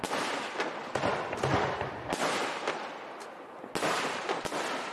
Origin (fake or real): real